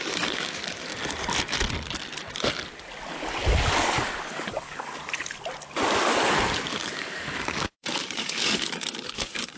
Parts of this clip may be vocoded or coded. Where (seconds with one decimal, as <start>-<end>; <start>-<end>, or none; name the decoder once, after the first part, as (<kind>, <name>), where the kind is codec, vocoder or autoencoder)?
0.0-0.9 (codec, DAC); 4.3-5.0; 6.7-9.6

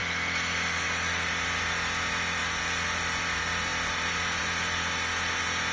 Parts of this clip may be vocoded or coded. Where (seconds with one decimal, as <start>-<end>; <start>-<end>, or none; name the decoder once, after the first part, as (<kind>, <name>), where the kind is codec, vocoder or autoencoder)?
0.0-1.3 (autoencoder, DAC-VAE)

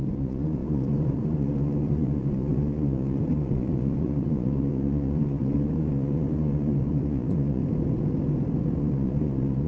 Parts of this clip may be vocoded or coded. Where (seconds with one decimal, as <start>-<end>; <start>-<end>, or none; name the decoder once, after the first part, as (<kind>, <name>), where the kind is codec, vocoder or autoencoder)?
0.0-7.6 (vocoder, Vocos); 8.8-9.7

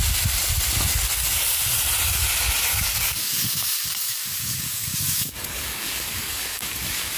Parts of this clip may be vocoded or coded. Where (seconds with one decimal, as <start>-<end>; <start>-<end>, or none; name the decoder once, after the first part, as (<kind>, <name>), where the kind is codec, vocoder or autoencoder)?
2.7-7.2 (codec, DAC)

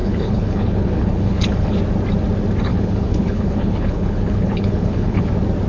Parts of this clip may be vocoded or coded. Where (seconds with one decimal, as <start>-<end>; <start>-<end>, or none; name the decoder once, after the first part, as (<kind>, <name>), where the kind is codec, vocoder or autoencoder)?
0.0-1.8 (codec, HILCodec); 2.7-5.3

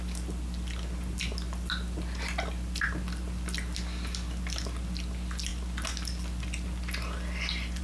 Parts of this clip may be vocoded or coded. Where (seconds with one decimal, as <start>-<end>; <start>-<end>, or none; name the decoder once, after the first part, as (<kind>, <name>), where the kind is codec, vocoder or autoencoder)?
none

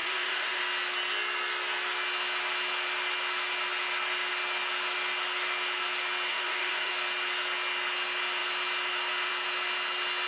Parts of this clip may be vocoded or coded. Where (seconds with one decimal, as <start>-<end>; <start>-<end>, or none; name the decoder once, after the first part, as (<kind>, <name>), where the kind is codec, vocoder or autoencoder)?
0.0-0.6 (autoencoder, DAC-VAE); 6.3-6.9